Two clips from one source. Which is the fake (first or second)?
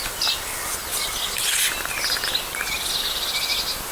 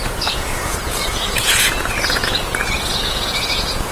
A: second